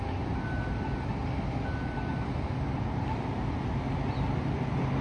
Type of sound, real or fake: real